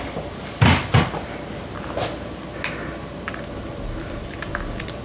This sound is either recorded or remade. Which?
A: recorded